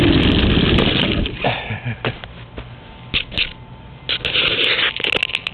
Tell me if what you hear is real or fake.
real